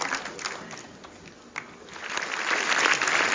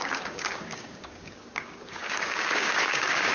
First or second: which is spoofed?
second